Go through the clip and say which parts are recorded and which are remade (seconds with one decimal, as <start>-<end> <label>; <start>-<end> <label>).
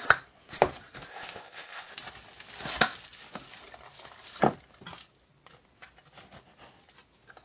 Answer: 0.0-1.1 recorded; 1.1-1.9 remade; 1.9-7.4 recorded